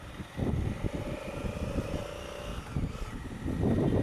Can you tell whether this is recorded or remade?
recorded